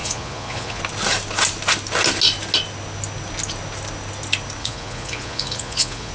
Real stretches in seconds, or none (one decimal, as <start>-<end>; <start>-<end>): 0.8-4.6